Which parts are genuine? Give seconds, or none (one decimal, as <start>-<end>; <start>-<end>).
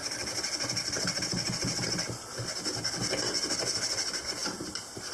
0.0-5.1